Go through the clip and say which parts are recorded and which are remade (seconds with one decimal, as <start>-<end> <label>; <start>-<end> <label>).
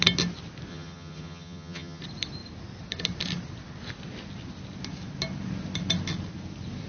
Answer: 0.0-0.7 recorded; 0.7-2.0 remade; 2.0-6.9 recorded